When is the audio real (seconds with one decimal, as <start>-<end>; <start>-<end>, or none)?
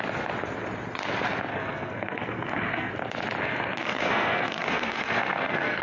0.0-1.5; 2.9-3.4